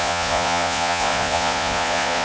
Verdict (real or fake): fake